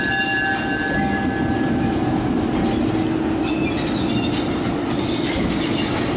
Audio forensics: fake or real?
real